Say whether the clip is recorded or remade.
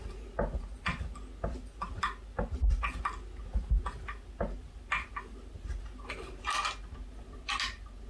recorded